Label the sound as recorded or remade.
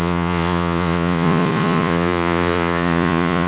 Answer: remade